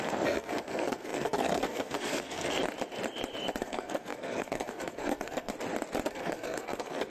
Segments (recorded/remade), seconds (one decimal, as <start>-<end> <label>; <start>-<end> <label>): 0.0-2.6 remade; 2.6-3.6 recorded; 3.6-5.5 remade; 5.5-6.1 recorded; 6.1-7.1 remade